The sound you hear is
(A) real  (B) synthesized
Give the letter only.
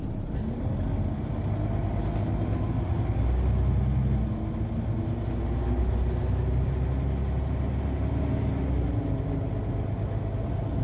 A